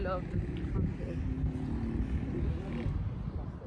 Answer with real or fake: real